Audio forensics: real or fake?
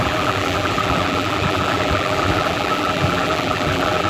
fake